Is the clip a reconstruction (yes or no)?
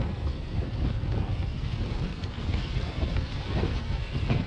yes